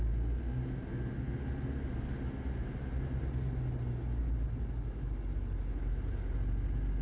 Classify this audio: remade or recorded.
recorded